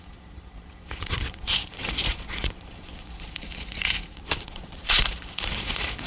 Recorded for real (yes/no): no